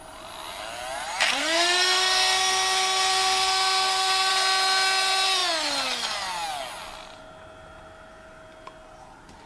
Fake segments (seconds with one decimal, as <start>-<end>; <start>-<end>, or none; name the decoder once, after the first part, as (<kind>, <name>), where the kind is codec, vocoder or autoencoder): 1.4-4.3 (codec, SNAC)